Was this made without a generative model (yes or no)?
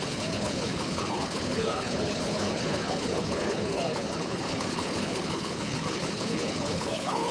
no